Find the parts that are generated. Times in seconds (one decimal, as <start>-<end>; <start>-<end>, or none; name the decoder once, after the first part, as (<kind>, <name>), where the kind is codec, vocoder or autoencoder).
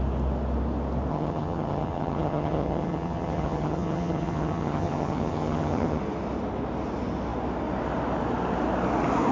1.1-6.0 (vocoder, HiFi-GAN)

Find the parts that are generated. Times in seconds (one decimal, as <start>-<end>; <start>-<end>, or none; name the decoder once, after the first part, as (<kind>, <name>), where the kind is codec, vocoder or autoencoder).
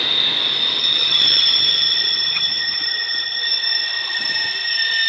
0.8-3.4 (vocoder, HiFi-GAN)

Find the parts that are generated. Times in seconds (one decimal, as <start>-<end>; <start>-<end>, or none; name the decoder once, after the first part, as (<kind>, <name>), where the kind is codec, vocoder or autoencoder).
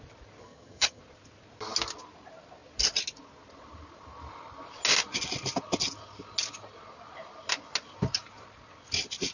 0.4-1.0 (vocoder, HiFi-GAN)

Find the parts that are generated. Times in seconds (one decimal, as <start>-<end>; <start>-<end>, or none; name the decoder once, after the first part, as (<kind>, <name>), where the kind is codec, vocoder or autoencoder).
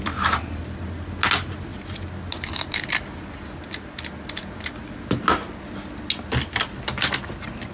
none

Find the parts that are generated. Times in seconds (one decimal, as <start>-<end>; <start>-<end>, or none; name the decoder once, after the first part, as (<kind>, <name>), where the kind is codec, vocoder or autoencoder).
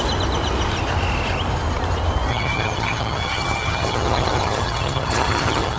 2.3-5.8 (vocoder, HiFi-GAN)